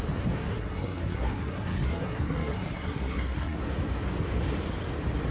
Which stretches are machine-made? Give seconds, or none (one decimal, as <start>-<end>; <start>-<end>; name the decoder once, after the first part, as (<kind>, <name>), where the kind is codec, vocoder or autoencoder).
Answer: 0.4-3.6 (codec, SNAC)